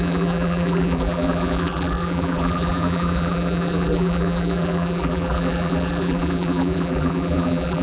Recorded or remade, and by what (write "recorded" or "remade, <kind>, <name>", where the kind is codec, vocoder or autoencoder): remade, vocoder, BigVGAN v2